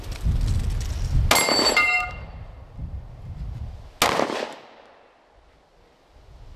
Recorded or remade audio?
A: recorded